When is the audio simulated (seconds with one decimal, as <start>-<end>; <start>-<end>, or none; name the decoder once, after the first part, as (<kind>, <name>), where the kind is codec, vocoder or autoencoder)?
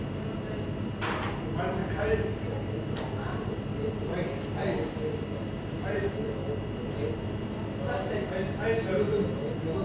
none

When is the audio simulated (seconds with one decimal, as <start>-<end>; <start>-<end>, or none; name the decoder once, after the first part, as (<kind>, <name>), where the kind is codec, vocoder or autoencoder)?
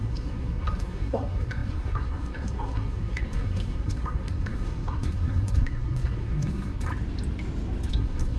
0.0-6.9 (codec, SNAC); 7.9-8.4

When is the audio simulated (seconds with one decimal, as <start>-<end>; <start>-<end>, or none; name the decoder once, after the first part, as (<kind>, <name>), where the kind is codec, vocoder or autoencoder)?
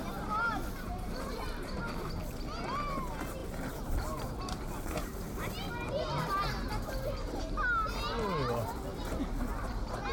3.4-7.4 (vocoder, BigVGAN v2)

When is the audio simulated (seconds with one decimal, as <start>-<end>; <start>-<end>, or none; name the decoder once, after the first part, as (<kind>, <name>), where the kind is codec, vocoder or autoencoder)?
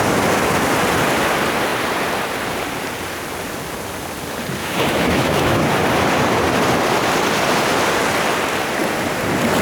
4.6-5.7 (autoencoder, DAC-VAE)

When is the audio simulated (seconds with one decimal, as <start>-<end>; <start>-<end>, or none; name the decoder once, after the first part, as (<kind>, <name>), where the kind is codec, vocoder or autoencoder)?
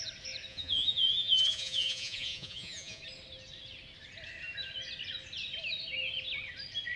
0.5-3.0 (vocoder, Vocos)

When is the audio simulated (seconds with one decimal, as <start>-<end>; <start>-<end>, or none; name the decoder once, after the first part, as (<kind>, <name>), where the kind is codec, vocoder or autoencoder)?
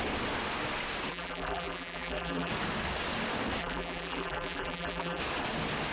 1.1-2.5 (vocoder, BigVGAN v2); 3.6-5.2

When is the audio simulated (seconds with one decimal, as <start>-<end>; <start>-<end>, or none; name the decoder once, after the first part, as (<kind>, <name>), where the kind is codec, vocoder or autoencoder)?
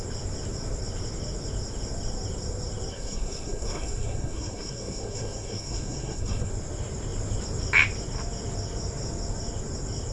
2.9-6.5 (codec, SNAC)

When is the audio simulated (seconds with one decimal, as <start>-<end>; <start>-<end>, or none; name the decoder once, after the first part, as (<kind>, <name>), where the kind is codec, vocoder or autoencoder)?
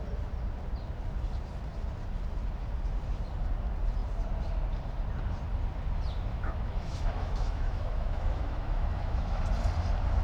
6.3-9.4 (autoencoder, DAC-VAE)